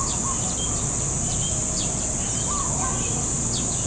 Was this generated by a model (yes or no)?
no